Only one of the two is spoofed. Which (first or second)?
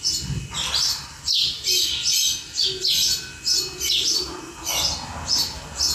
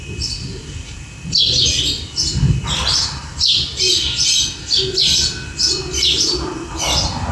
second